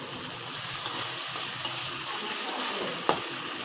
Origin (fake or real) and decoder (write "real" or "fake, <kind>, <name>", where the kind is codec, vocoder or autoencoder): real